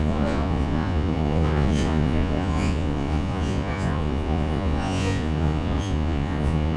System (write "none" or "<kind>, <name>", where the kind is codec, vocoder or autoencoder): vocoder, Vocos